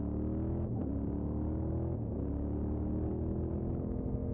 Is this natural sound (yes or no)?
yes